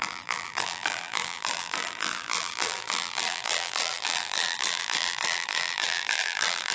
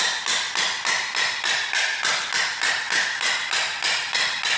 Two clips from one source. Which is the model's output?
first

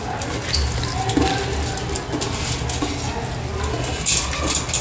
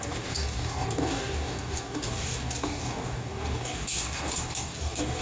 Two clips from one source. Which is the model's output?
second